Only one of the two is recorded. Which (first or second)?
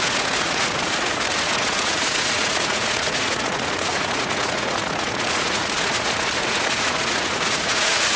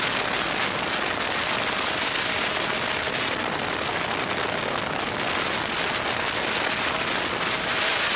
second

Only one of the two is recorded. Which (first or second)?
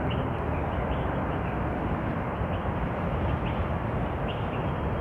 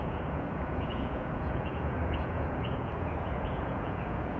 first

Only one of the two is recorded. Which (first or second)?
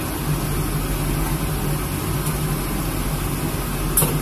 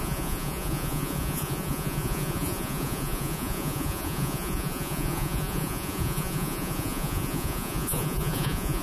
first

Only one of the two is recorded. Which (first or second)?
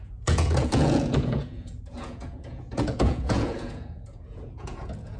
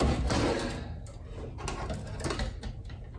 second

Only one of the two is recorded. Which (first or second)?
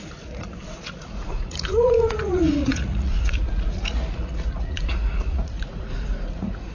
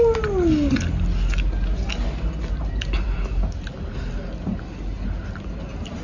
second